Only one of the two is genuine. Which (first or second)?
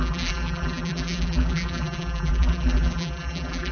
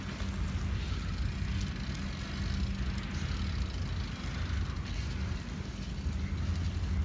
second